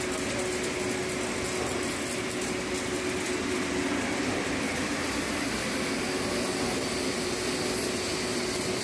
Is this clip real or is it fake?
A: real